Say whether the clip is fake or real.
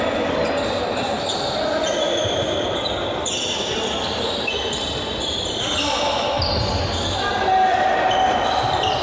real